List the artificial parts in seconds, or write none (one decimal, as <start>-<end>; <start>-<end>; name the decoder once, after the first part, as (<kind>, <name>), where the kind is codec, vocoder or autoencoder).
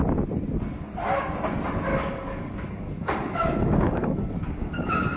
1.9-5.2 (codec, DAC)